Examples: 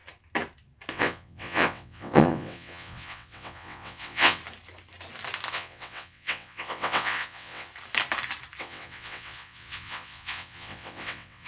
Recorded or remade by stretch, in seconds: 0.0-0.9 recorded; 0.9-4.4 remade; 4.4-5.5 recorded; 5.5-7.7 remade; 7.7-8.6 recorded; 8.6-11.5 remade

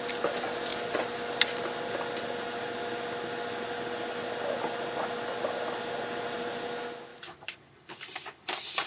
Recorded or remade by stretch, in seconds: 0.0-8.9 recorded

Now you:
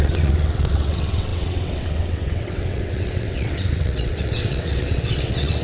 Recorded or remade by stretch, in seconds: 0.0-5.6 remade

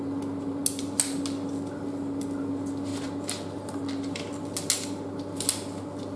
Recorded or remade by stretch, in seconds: 0.0-6.2 recorded